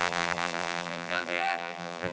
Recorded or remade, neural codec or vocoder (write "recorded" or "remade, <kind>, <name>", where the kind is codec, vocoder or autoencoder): remade, vocoder, BigVGAN v2